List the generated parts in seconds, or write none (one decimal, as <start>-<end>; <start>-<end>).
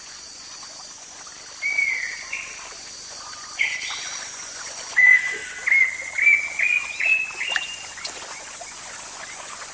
0.0-1.3; 2.0-5.4; 6.4-9.7